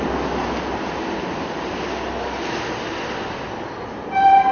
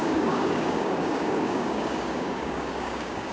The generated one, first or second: second